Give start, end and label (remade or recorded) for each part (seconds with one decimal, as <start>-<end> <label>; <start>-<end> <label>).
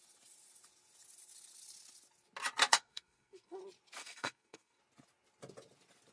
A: 0.0-2.7 recorded; 2.7-3.6 remade; 3.6-4.0 recorded; 4.0-4.8 remade; 4.8-6.1 recorded